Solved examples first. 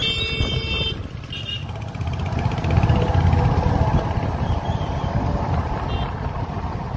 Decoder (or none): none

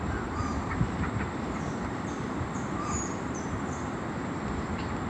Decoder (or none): vocoder, BigVGAN v2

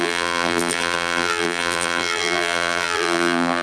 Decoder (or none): vocoder, BigVGAN v2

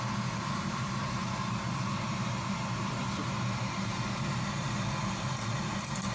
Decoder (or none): vocoder, BigVGAN v2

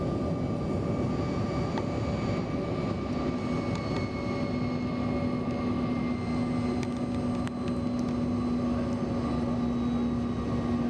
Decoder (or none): none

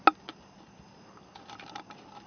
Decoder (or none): none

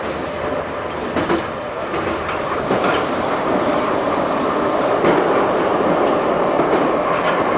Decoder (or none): vocoder, BigVGAN v2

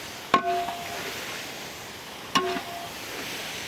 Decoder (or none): none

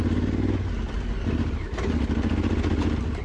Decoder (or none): none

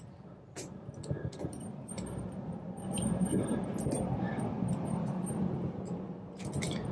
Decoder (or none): vocoder, BigVGAN v2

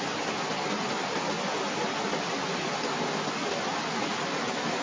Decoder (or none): none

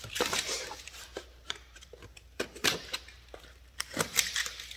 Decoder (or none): vocoder, BigVGAN v2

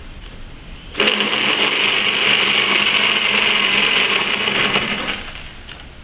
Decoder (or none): none